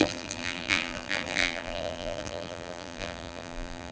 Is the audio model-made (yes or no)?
yes